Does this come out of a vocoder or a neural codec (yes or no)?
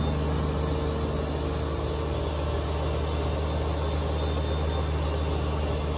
no